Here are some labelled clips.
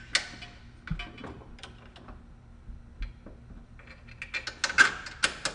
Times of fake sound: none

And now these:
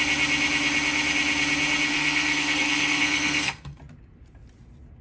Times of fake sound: 1.9-3.8

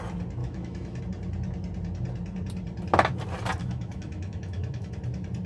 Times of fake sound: 0.4-1.0; 3.6-4.9

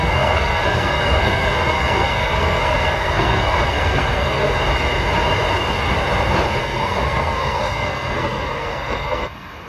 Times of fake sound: 0.0-4.6; 6.6-9.7